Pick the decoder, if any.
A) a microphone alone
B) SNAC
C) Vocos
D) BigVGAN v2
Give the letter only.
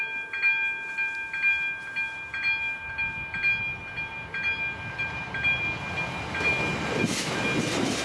A